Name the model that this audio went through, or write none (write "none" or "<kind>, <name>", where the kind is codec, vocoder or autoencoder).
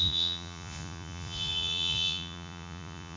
vocoder, Vocos